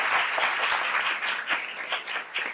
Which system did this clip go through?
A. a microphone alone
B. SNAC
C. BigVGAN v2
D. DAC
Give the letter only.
A